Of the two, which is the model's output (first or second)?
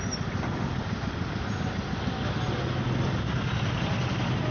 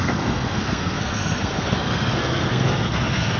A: second